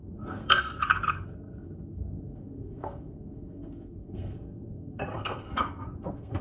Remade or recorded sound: remade